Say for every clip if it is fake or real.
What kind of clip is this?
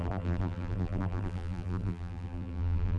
fake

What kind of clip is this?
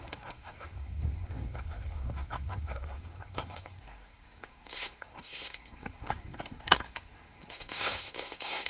fake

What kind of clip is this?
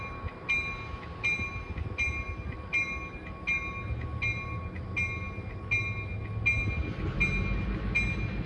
real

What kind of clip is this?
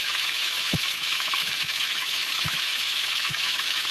fake